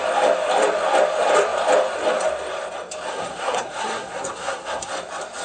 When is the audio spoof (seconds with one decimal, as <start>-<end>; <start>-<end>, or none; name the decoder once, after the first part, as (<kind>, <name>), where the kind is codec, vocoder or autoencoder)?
3.1-4.9 (codec, SNAC)